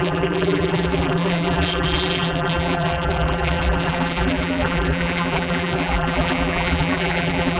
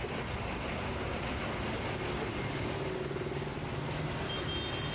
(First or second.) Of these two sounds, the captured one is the second